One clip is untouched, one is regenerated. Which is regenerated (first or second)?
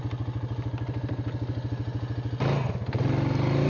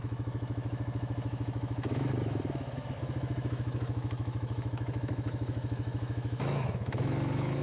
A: second